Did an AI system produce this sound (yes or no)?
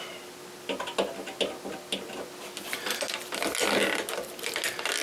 no